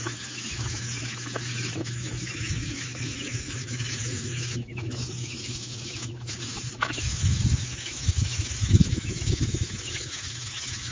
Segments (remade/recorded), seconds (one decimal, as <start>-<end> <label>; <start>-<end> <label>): 0.0-10.9 remade

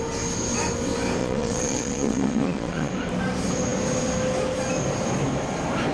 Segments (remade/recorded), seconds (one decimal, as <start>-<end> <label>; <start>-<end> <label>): 0.0-1.2 recorded; 1.2-2.9 remade; 2.9-5.9 recorded

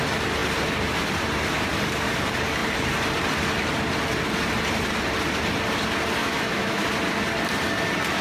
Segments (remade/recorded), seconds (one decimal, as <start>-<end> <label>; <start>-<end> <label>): 0.0-6.2 recorded; 6.2-6.8 remade; 6.8-8.2 recorded

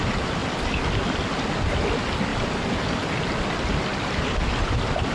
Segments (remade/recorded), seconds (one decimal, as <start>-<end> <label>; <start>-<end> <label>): 0.0-5.1 recorded

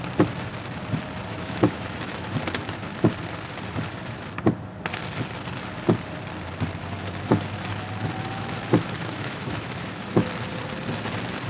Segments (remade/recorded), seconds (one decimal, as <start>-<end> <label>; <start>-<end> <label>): 0.0-1.3 recorded; 1.3-2.3 remade; 2.3-9.0 recorded; 9.0-10.3 remade; 10.3-11.5 recorded

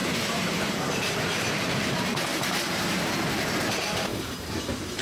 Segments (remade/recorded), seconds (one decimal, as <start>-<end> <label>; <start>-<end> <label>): 0.0-3.0 remade; 3.0-4.1 recorded; 4.1-5.0 remade